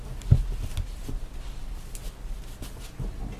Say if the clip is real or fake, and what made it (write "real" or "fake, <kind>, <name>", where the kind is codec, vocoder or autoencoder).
real